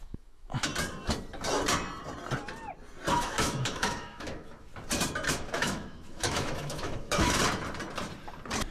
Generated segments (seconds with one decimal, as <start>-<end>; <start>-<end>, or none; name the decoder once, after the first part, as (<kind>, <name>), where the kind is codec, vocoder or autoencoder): 0.0-0.7 (autoencoder, DAC-VAE); 3.1-4.7; 5.3-7.4